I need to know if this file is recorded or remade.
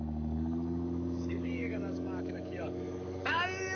remade